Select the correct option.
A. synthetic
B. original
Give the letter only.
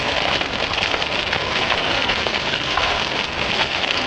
A